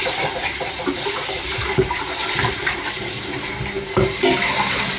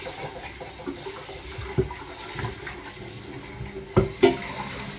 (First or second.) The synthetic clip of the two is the first